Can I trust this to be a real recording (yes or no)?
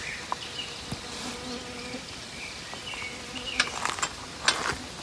yes